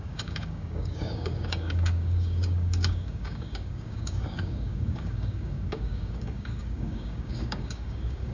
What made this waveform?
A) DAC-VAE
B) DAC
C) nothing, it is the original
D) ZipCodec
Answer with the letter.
B